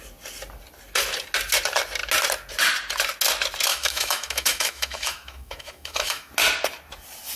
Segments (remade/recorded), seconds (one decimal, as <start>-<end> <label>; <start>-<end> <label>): 0.0-3.7 recorded; 3.7-6.3 remade; 6.3-7.4 recorded